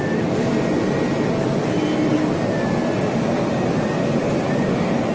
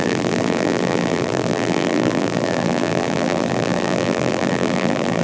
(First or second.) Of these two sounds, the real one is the first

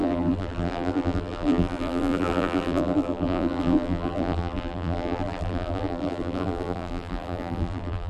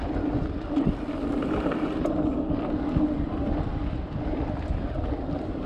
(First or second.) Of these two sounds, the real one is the second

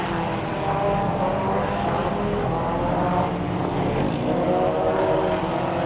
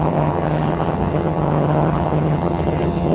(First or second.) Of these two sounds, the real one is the first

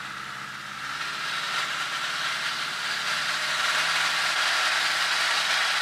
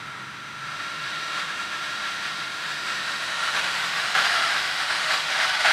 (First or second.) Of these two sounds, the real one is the first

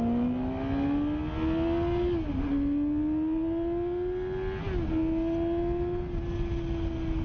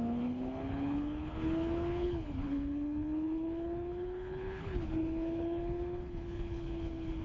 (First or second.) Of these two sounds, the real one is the first